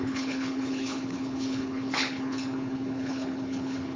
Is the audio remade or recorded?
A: remade